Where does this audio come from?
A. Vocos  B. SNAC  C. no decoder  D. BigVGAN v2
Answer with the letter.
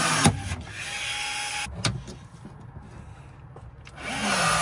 C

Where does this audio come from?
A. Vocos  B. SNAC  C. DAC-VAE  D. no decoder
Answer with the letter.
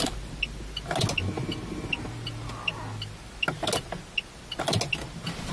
D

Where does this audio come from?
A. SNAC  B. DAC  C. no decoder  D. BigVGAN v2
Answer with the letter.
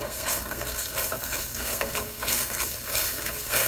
A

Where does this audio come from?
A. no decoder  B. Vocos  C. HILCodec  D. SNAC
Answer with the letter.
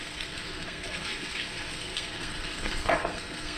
D